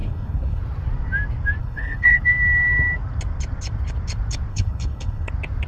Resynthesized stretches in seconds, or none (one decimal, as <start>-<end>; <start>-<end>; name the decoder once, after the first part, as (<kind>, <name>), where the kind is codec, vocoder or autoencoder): 0.0-0.6 (codec, HILCodec); 1.6-2.2; 4.5-5.3

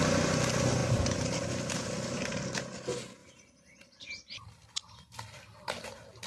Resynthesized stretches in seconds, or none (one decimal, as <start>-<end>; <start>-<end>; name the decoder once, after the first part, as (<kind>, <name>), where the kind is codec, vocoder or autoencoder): 0.8-1.5 (vocoder, BigVGAN v2); 3.2-5.7

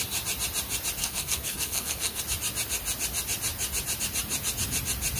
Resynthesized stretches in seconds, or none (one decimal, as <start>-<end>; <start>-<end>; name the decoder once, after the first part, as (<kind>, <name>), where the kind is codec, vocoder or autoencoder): 1.0-2.2 (codec, SNAC)